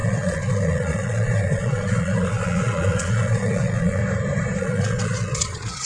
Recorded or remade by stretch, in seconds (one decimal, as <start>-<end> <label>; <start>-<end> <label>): 0.0-4.0 remade; 4.0-4.6 recorded; 4.6-5.9 remade